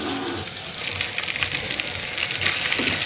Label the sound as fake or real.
real